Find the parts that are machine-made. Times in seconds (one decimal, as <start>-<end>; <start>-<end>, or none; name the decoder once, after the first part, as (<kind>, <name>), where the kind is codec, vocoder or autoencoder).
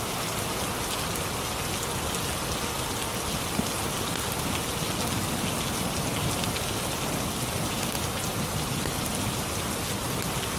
none